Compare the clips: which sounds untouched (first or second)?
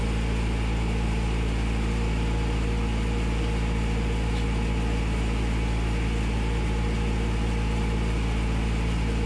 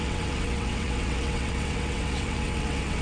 first